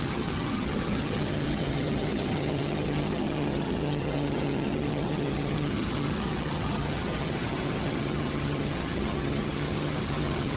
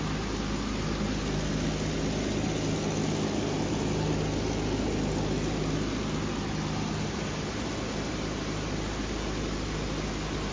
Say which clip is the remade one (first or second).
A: first